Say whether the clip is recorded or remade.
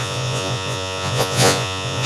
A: remade